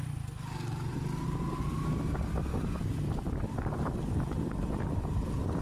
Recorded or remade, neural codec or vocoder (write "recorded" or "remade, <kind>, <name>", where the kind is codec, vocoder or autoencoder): recorded